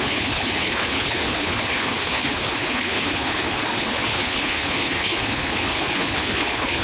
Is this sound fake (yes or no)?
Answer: yes